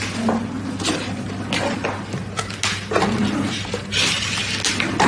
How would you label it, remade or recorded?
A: recorded